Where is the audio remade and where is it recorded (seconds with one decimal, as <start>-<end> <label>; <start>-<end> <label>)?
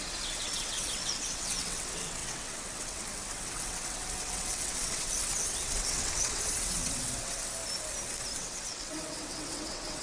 0.0-7.6 remade; 7.6-8.4 recorded; 8.4-10.0 remade